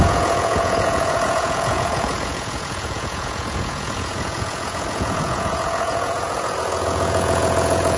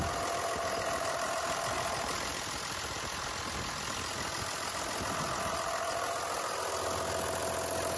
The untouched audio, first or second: second